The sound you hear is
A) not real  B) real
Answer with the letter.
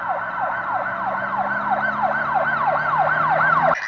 B